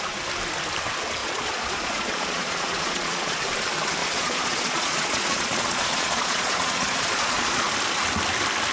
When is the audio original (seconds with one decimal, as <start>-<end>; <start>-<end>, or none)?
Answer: 0.0-1.2; 3.5-4.0; 7.7-8.7